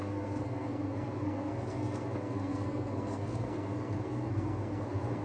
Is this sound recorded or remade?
remade